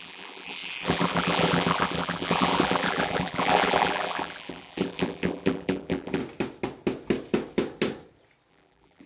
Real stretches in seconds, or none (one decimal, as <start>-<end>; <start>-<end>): 6.2-8.5